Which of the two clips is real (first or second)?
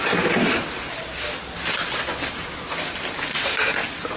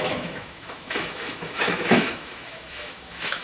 first